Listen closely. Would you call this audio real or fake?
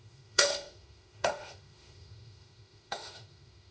fake